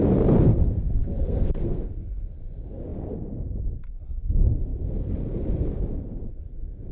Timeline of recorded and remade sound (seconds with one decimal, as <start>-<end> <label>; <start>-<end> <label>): 0.0-0.5 recorded; 0.5-2.2 remade; 2.2-6.9 recorded